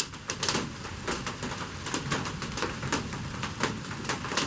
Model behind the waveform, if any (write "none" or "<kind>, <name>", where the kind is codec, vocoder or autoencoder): none